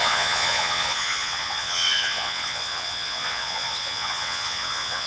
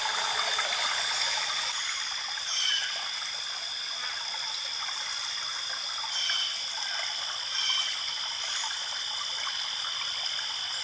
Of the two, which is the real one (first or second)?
second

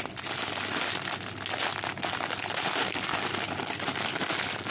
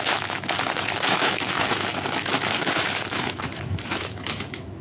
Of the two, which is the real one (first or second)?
first